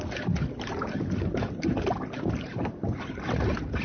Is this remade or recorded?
recorded